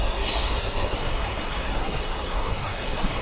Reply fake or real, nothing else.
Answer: fake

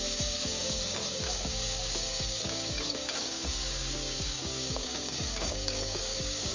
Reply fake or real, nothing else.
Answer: fake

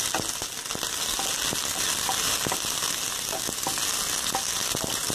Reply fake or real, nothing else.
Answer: real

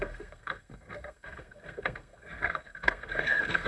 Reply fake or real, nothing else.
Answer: fake